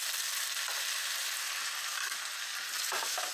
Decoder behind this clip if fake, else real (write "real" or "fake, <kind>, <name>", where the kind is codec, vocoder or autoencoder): real